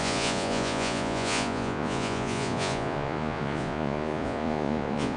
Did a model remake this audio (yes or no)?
yes